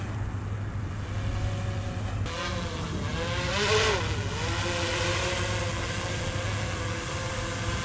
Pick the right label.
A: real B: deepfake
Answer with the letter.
A